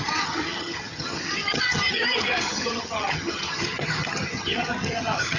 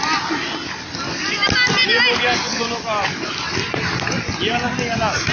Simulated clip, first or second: first